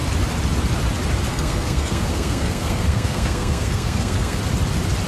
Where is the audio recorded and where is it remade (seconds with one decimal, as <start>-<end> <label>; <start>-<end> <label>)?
0.0-1.3 recorded; 1.3-4.4 remade; 4.4-5.1 recorded